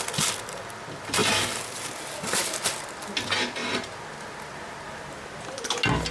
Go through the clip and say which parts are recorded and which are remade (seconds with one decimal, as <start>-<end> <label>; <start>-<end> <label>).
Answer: 0.0-6.1 recorded